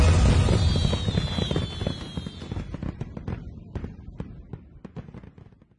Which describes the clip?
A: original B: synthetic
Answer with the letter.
A